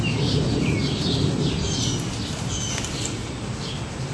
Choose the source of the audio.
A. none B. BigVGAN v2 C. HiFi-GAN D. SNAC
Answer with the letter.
A